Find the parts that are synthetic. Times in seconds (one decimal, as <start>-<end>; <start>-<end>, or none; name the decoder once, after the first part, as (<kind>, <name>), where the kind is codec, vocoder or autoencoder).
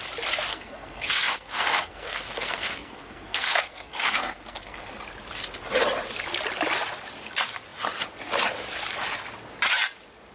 0.5-4.9 (codec, SNAC)